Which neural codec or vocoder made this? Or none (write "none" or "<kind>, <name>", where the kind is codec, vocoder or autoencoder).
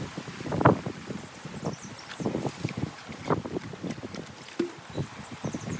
vocoder, BigVGAN v2